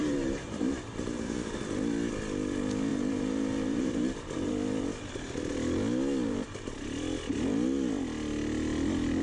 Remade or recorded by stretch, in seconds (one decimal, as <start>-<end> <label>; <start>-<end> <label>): 0.0-1.6 remade; 1.6-2.9 recorded; 2.9-4.5 remade; 4.5-9.2 recorded

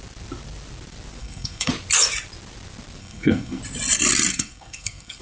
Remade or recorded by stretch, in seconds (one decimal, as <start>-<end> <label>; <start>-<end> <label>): 0.0-1.2 recorded; 1.2-1.7 remade; 1.7-3.0 recorded; 3.0-3.6 remade; 3.6-4.3 recorded; 4.3-5.2 remade

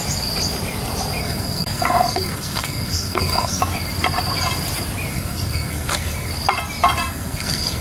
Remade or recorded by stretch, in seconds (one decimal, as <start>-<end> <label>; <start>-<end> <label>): 0.0-1.2 recorded; 1.2-3.6 remade; 3.6-5.1 recorded; 5.1-6.3 remade; 6.3-7.0 recorded; 7.0-7.8 remade

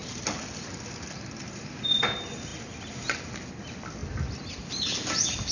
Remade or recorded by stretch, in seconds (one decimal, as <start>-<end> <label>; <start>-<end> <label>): 0.0-0.7 remade; 0.7-4.0 recorded; 4.0-5.5 remade

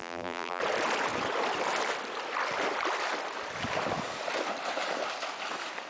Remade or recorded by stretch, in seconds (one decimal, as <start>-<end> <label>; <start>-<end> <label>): 0.0-0.6 remade; 0.6-5.9 recorded

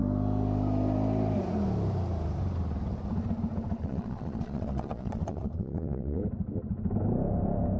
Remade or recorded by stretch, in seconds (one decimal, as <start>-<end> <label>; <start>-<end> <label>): 0.0-3.8 recorded; 3.8-6.2 remade; 6.2-7.8 recorded